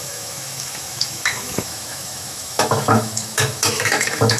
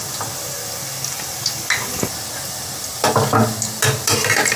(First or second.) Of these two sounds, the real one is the second